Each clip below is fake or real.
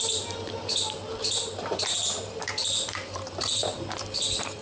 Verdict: fake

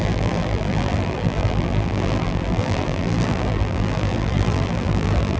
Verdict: fake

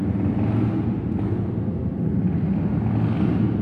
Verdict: real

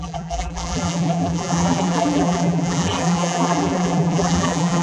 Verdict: fake